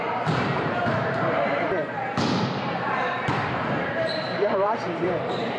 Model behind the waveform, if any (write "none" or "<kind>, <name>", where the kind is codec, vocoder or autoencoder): vocoder, BigVGAN v2